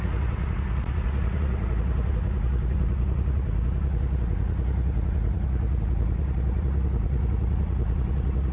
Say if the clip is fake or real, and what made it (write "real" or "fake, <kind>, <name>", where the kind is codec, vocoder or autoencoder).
fake, vocoder, Vocos